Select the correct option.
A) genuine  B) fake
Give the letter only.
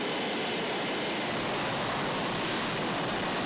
A